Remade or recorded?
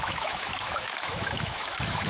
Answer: remade